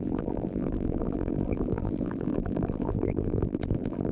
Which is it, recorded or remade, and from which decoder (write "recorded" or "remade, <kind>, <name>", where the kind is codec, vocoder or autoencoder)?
remade, vocoder, BigVGAN v2